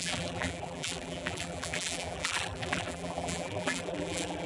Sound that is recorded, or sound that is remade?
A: remade